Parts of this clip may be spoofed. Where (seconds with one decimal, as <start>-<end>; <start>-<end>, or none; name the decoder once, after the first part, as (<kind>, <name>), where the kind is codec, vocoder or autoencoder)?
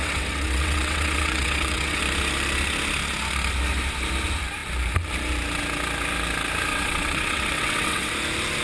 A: 0.0-2.0 (vocoder, WaveNeXt); 6.7-8.1